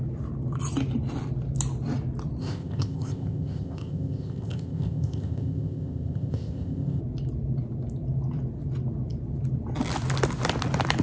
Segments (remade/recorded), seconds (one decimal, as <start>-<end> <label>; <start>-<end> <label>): 0.0-2.4 recorded; 2.4-7.0 remade; 7.0-11.0 recorded